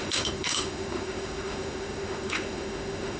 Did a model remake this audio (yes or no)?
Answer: yes